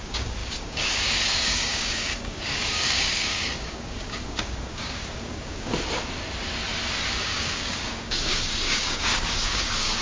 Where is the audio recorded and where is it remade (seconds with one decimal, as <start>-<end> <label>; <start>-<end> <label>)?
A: 0.0-5.7 remade; 5.7-7.2 recorded; 7.2-10.0 remade